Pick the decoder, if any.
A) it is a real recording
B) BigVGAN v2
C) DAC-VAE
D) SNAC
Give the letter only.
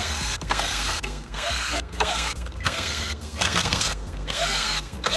D